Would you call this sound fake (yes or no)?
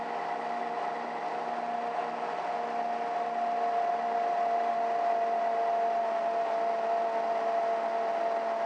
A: no